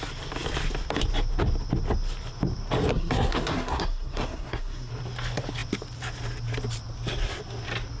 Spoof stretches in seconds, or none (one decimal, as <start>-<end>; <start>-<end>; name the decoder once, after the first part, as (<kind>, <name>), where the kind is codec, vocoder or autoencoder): 2.9-4.9 (codec, SNAC)

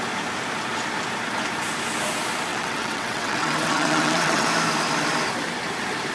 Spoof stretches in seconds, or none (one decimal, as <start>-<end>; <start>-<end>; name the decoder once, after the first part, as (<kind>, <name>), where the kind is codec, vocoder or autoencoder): 2.5-4.5 (vocoder, WaveNeXt)

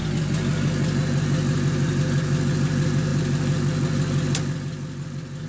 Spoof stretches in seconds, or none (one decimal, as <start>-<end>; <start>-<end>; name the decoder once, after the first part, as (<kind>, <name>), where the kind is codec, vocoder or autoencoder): none

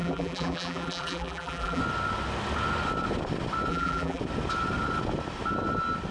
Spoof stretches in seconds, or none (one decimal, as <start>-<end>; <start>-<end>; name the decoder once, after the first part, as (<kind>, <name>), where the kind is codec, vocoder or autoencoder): 0.0-1.8 (vocoder, BigVGAN v2); 3.7-4.2

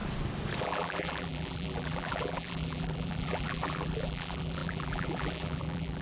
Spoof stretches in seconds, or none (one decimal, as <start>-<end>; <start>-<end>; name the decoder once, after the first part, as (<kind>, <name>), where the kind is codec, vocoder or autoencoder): 0.6-6.0 (vocoder, BigVGAN v2)

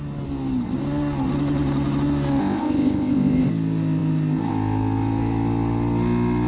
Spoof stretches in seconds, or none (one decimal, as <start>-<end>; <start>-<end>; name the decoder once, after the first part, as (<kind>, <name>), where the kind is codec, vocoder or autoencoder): 2.4-3.5 (codec, ZipCodec)

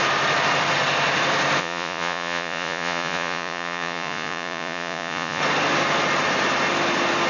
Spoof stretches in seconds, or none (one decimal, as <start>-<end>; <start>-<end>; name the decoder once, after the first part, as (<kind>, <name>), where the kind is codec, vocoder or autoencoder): 1.6-5.4 (vocoder, Vocos)